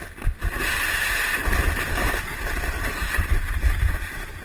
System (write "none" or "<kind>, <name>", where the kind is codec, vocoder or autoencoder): none